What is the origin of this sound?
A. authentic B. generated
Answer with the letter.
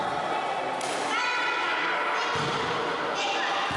A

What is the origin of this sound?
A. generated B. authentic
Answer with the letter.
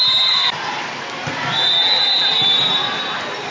B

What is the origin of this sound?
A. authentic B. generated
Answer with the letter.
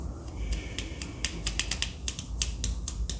A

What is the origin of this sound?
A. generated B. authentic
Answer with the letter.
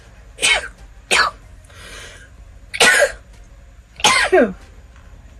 B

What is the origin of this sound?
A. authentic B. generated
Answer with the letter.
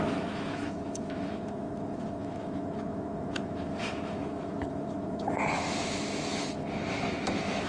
B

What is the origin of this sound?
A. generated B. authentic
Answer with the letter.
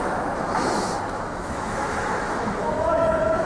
A